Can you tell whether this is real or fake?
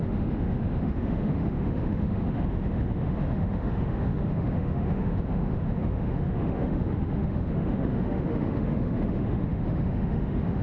fake